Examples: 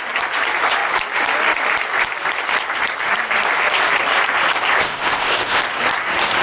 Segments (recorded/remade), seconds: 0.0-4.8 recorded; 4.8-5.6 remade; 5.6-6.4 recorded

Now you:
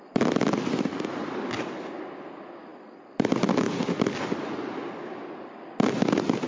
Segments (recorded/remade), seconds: 0.0-6.5 recorded

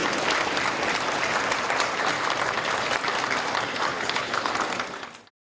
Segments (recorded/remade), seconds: 0.0-3.9 recorded; 3.9-4.5 remade; 4.5-5.4 recorded

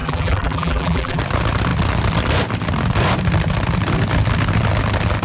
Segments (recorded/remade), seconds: 0.0-1.2 remade; 1.2-5.2 recorded